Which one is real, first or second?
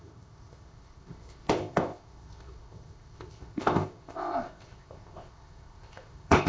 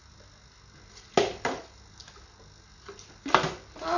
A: second